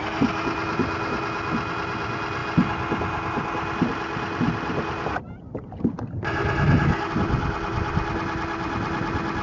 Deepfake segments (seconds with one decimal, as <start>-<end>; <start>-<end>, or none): none